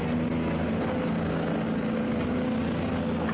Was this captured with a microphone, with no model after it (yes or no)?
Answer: yes